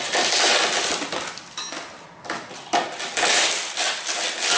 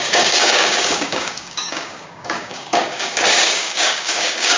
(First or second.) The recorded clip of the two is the first